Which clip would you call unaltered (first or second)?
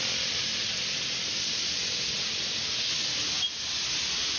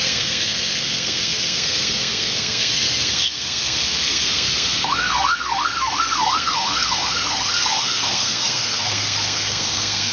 first